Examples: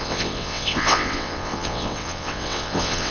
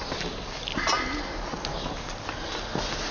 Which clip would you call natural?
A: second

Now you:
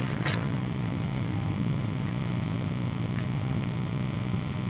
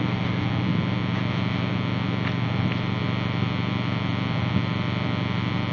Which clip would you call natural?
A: second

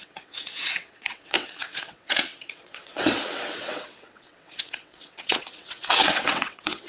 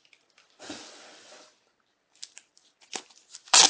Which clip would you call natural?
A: second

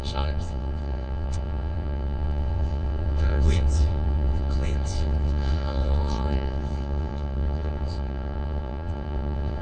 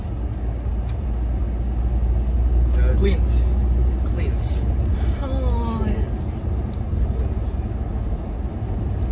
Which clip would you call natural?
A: second